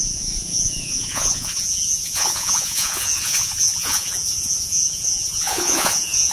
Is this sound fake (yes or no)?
yes